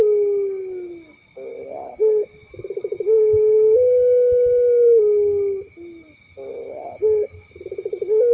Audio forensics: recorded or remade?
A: recorded